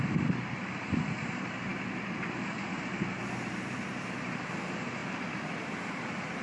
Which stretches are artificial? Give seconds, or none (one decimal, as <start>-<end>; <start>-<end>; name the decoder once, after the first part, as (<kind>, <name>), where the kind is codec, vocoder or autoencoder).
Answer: none